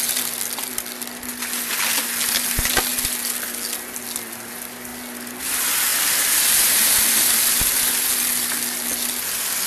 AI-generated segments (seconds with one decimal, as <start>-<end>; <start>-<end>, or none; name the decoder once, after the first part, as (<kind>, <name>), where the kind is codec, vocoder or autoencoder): none